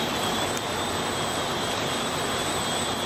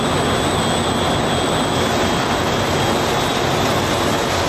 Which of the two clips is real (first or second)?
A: second